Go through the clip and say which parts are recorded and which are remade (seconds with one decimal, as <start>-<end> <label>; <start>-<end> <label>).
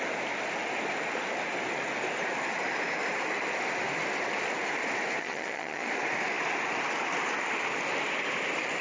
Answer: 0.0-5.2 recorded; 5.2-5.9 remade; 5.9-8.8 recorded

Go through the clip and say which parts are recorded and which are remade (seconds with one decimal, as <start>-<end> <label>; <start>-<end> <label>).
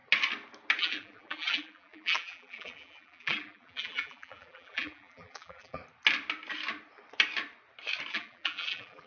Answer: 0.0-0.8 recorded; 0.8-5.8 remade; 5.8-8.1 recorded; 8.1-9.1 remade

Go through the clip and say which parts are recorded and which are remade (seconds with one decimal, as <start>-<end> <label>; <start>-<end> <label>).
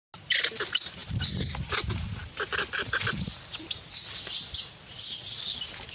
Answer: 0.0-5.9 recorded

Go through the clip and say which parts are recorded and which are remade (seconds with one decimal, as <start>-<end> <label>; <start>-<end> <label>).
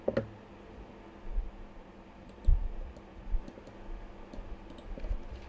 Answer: 0.0-1.3 recorded; 1.3-3.4 remade; 3.4-5.5 recorded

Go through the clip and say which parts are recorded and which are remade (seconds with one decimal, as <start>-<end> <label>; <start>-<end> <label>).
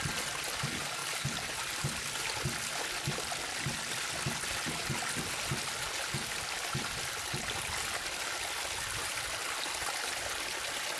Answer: 0.0-5.9 recorded; 5.9-6.9 remade; 6.9-11.0 recorded